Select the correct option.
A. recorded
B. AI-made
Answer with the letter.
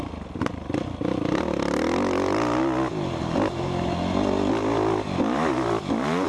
A